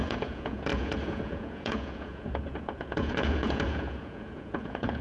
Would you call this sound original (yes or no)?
no